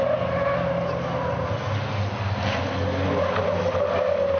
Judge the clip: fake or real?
real